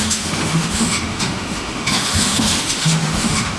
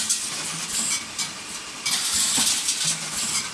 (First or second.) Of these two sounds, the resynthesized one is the first